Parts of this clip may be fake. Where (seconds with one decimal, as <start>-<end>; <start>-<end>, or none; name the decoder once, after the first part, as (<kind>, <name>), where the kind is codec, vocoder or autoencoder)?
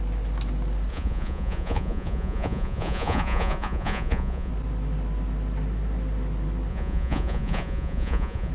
0.9-4.5 (vocoder, Vocos); 6.7-8.5